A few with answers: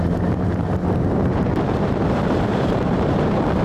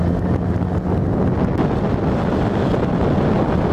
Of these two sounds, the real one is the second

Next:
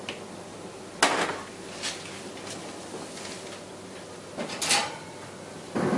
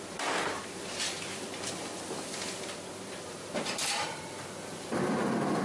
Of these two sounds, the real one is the first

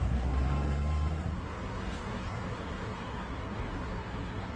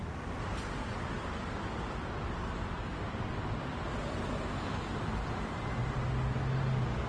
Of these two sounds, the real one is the second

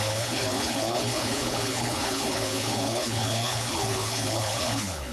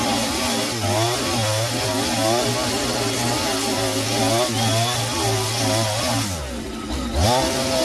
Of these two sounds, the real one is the second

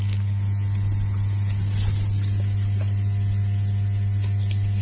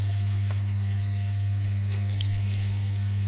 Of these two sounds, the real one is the first